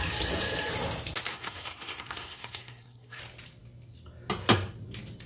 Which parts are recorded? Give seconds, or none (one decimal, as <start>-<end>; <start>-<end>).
0.0-1.3; 3.2-5.3

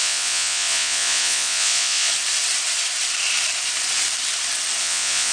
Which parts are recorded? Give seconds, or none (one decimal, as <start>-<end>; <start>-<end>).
2.1-4.8

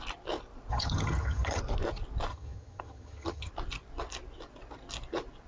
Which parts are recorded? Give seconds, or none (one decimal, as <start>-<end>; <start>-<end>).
0.0-0.7; 1.6-2.3; 3.5-5.5

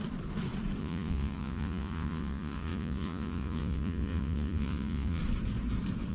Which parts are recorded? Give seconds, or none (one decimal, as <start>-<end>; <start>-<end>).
0.0-0.8; 5.2-6.1

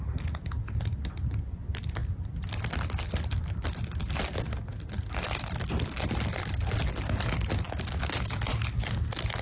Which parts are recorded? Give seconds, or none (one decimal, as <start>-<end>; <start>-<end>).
0.0-9.4

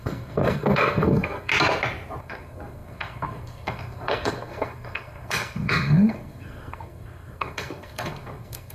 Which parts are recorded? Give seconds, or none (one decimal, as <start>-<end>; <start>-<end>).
1.5-2.2